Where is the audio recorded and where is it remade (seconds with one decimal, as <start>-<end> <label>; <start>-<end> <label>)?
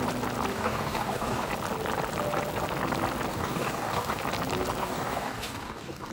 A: 0.0-0.5 recorded; 0.5-1.5 remade; 1.5-3.3 recorded; 3.3-4.2 remade; 4.2-4.8 recorded; 4.8-6.1 remade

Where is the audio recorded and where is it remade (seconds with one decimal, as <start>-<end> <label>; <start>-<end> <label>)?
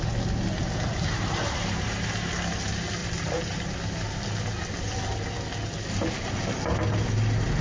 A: 0.0-0.6 recorded; 0.6-2.3 remade; 2.3-3.0 recorded; 3.0-3.7 remade; 3.7-7.6 recorded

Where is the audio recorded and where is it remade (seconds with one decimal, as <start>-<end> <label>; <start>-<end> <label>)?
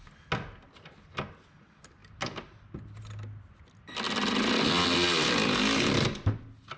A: 0.0-6.8 recorded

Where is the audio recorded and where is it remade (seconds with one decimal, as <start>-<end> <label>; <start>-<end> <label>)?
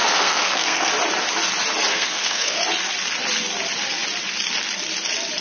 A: 0.0-0.9 remade; 0.9-1.9 recorded; 1.9-2.6 remade; 2.6-5.4 recorded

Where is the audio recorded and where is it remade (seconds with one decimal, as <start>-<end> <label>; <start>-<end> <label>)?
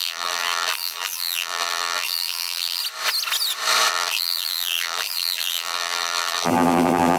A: 0.0-2.8 remade; 2.8-3.9 recorded; 3.9-7.2 remade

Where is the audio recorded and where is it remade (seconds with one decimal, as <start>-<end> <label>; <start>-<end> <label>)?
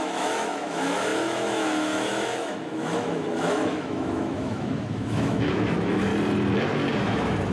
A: 0.0-6.1 remade; 6.1-7.0 recorded; 7.0-7.5 remade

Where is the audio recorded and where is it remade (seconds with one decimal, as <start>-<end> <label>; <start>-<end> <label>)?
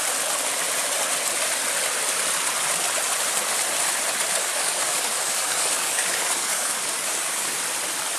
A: 0.0-4.4 recorded; 4.4-7.6 remade; 7.6-8.2 recorded